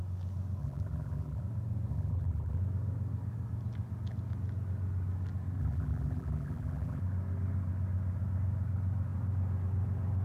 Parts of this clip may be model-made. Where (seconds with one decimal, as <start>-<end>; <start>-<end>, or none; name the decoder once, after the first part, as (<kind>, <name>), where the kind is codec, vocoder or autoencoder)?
0.6-1.4 (vocoder, BigVGAN v2); 1.9-2.6; 5.6-7.0